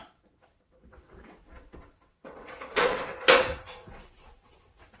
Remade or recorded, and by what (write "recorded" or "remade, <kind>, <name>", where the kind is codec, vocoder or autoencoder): remade, vocoder, WaveNeXt